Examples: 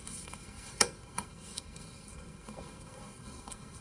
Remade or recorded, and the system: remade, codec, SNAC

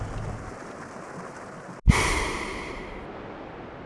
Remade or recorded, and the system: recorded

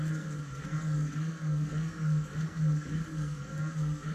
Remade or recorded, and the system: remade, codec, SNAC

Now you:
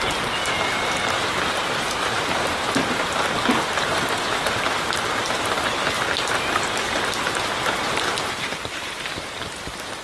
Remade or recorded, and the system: remade, vocoder, BigVGAN v2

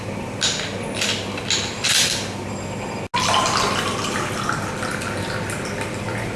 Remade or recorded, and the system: recorded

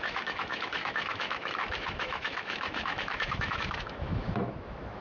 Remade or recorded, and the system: remade, autoencoder, DAC-VAE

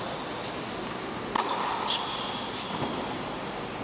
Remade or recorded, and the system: recorded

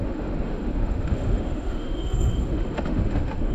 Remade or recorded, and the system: remade, autoencoder, DAC-VAE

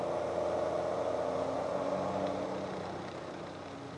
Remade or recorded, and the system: recorded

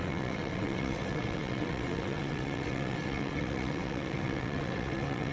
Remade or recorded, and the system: remade, vocoder, WaveNeXt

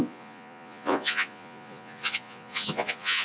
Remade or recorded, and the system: remade, vocoder, Vocos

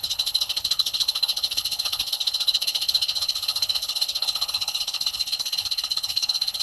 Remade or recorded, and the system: remade, codec, HILCodec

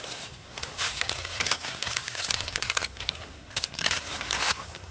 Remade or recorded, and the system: remade, codec, SNAC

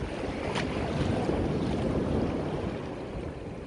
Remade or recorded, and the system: recorded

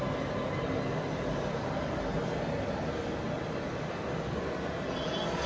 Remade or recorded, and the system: recorded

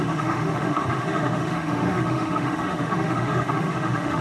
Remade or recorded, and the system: remade, autoencoder, DAC-VAE